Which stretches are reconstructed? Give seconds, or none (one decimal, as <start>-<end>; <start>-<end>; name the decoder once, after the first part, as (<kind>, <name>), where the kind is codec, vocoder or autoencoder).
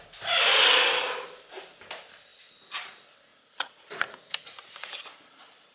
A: 3.3-4.9 (vocoder, Vocos)